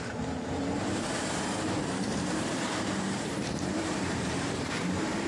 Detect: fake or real fake